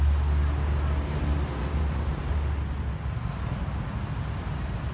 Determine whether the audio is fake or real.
real